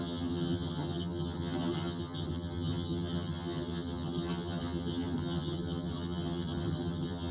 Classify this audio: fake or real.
fake